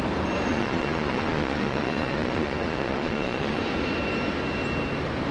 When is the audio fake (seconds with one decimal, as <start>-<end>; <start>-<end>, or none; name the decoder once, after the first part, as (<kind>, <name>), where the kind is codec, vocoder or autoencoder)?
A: 0.5-3.6 (vocoder, Vocos)